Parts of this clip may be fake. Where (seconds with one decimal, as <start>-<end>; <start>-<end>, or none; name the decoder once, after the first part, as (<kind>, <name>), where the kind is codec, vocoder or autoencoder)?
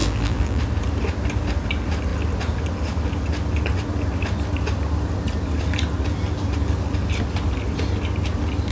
0.0-0.6 (vocoder, BigVGAN v2)